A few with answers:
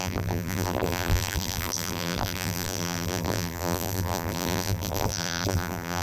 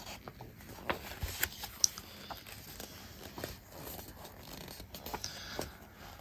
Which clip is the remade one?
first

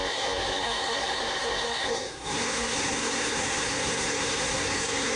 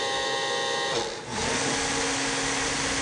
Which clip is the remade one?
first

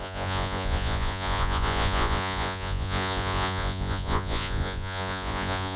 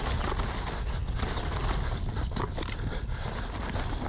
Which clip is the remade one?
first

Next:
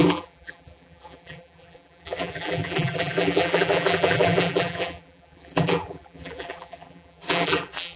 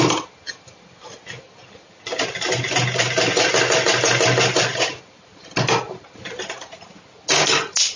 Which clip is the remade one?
first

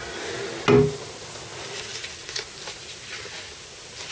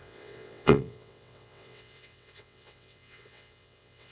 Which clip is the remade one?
second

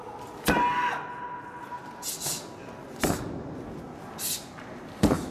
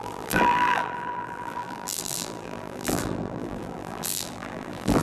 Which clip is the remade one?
second